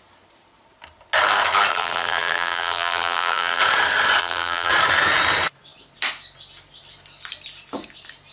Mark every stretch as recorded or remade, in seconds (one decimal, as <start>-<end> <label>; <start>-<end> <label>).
0.0-1.7 recorded; 1.7-3.6 remade; 3.6-4.2 recorded; 4.2-4.7 remade; 4.7-8.3 recorded